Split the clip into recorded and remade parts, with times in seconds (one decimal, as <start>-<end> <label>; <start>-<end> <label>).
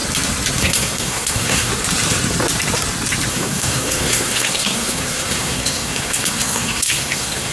0.0-0.6 recorded; 0.6-1.7 remade; 1.7-3.3 recorded; 3.3-7.5 remade